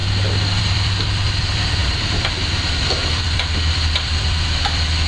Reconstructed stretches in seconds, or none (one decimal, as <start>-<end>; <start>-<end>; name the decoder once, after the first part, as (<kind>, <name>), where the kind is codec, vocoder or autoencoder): 0.6-5.1 (vocoder, BigVGAN v2)